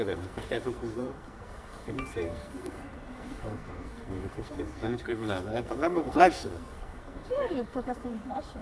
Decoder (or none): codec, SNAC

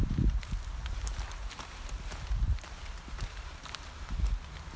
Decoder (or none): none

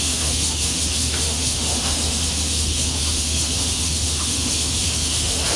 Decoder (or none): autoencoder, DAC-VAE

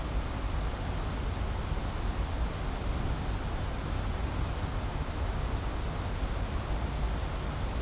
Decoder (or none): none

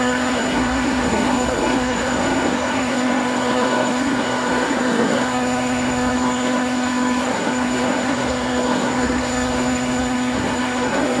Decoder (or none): codec, SNAC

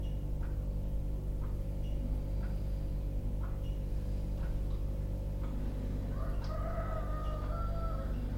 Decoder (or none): none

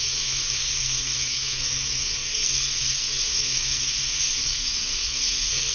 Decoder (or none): codec, SNAC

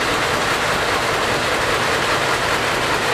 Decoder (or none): none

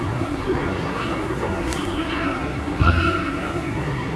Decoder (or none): codec, SNAC